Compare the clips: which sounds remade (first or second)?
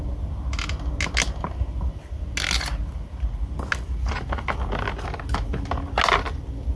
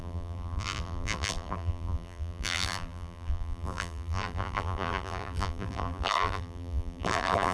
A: second